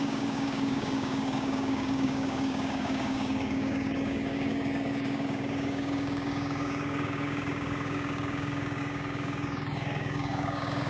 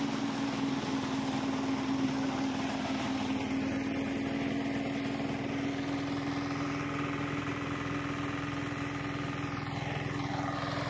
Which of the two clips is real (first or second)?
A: second